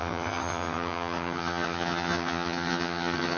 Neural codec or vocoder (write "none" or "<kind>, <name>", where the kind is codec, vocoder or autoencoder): vocoder, HiFi-GAN